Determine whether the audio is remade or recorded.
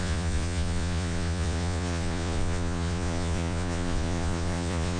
remade